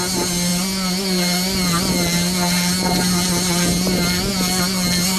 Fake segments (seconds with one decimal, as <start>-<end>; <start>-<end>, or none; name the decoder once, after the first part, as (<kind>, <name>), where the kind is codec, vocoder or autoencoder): none